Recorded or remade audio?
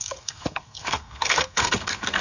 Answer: remade